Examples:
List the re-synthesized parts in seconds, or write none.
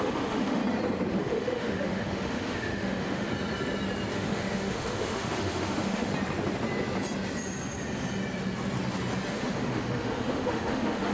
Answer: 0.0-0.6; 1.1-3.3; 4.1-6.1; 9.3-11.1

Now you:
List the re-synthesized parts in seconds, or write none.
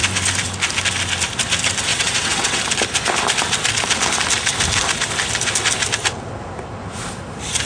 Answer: 1.9-2.6